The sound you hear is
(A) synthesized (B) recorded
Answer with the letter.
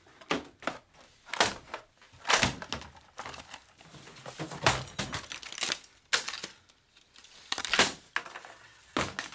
B